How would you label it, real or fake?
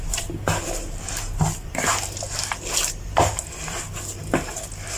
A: real